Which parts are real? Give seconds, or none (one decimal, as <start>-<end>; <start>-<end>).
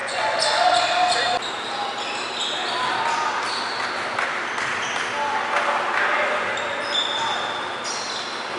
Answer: 0.6-8.6